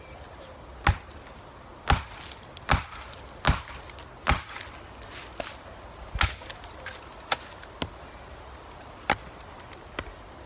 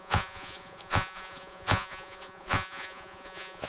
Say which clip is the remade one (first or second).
second